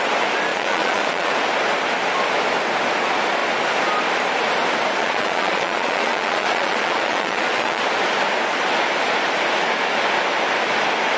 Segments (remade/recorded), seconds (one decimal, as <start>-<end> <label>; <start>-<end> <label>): 0.0-0.5 recorded; 0.5-1.3 remade; 1.3-5.0 recorded; 5.0-7.8 remade; 7.8-11.2 recorded